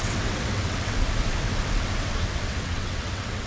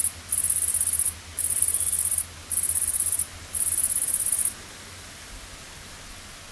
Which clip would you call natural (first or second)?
second